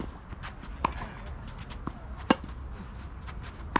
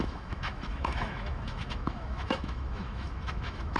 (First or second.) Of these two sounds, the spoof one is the second